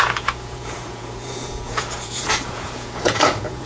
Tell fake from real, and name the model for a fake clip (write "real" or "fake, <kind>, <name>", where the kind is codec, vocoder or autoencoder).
fake, vocoder, Vocos